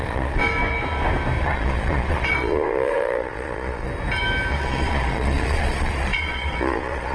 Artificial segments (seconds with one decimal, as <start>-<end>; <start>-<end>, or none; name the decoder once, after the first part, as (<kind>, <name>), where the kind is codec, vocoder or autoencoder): 0.0-0.4 (vocoder, Vocos); 1.4-3.9; 4.5-7.1